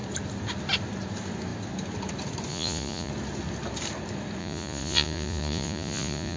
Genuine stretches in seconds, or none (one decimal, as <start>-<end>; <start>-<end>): 0.0-2.5; 3.1-4.4